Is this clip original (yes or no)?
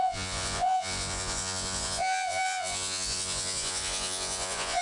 no